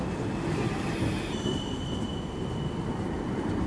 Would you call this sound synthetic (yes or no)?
no